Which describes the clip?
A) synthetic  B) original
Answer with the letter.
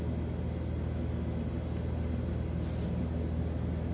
B